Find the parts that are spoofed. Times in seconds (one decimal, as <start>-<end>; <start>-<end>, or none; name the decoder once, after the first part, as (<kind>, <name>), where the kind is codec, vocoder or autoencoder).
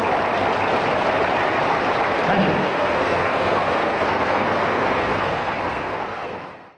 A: 2.6-6.8 (codec, SNAC)